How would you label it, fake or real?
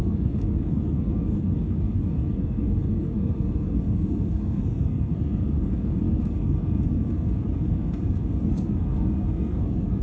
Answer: fake